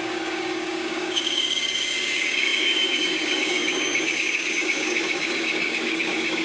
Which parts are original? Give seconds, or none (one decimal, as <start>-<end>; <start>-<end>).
none